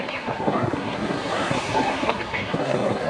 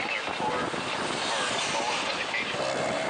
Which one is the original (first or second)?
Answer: second